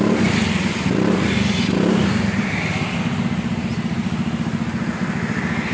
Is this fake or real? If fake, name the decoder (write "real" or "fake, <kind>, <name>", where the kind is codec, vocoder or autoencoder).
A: real